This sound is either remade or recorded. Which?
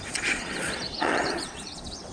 remade